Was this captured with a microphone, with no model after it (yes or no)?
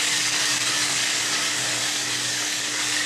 no